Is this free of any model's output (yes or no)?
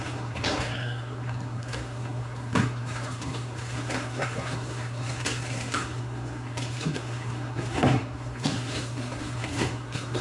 no